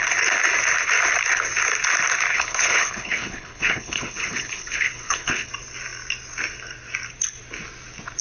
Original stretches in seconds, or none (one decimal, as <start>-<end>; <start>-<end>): 0.0-2.3; 5.5-8.2